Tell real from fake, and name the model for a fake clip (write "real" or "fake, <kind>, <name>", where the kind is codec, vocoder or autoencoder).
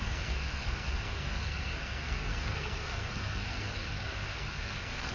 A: fake, codec, SNAC